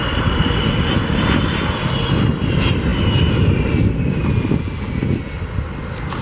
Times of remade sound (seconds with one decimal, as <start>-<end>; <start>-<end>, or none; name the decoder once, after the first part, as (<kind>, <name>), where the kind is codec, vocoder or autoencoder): none